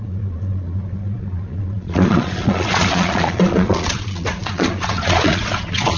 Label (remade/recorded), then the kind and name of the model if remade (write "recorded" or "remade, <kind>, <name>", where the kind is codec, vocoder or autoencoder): remade, vocoder, Vocos